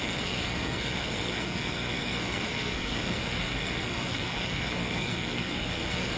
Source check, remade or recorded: remade